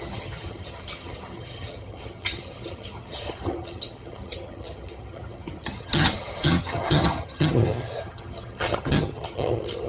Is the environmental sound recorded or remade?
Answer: remade